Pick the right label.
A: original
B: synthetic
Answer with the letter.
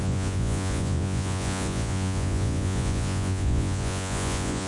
B